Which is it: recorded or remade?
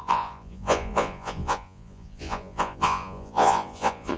remade